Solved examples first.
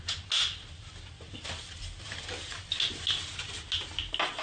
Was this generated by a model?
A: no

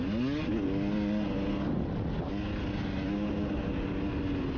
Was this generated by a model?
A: no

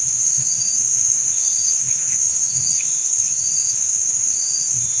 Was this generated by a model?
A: yes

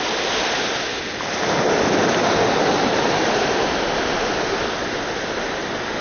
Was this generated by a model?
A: no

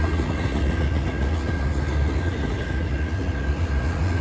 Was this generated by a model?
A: yes